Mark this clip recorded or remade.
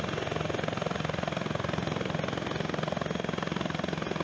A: recorded